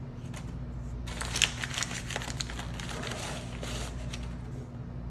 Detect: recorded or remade recorded